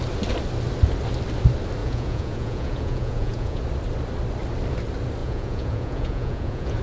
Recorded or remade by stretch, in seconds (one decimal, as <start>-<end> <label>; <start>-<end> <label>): 0.0-1.8 recorded; 1.8-3.6 remade; 3.6-5.2 recorded; 5.2-6.8 remade